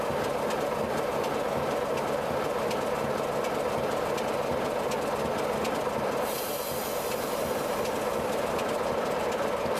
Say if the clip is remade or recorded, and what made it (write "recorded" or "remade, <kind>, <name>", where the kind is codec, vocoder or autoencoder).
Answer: recorded